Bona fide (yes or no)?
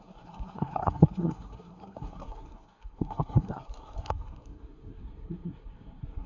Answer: no